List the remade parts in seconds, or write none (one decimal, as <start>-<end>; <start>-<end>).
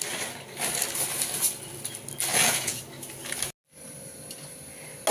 2.3-2.8